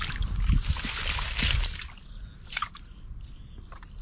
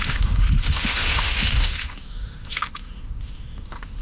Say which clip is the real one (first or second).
first